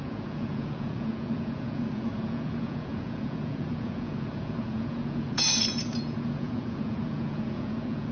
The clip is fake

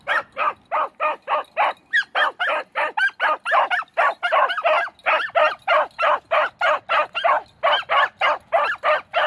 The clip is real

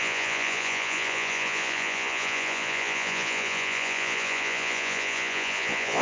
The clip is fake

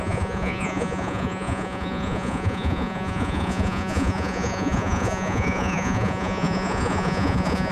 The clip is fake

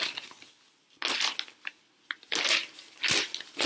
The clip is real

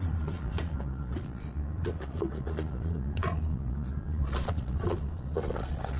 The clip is fake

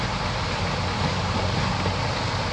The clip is real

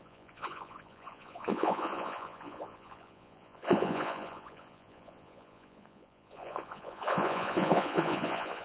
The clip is fake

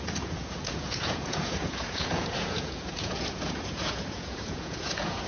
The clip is fake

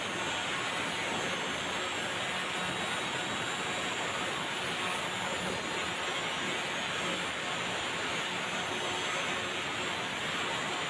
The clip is real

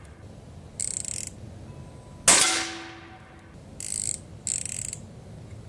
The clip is real